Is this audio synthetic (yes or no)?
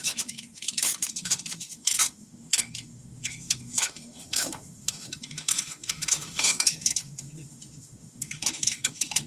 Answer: yes